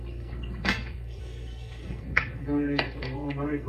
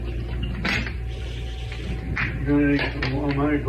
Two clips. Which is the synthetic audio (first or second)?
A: first